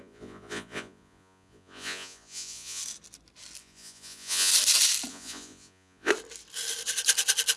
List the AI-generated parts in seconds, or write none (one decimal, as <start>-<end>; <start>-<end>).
0.0-2.8; 3.6-4.5; 5.1-6.1